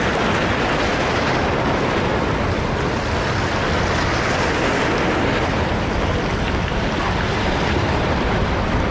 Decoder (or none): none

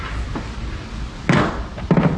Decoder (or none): none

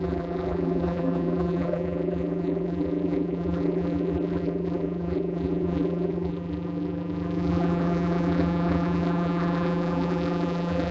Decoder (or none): vocoder, BigVGAN v2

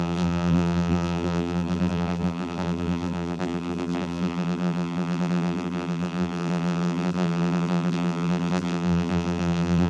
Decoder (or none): vocoder, BigVGAN v2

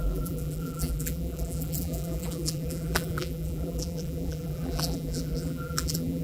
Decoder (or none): vocoder, BigVGAN v2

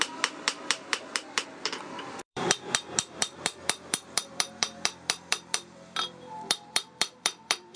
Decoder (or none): vocoder, BigVGAN v2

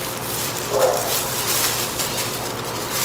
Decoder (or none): vocoder, BigVGAN v2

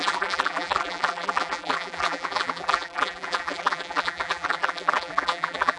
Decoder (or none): vocoder, BigVGAN v2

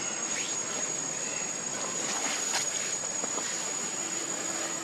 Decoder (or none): none